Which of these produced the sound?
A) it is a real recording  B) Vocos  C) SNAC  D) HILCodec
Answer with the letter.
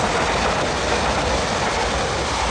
A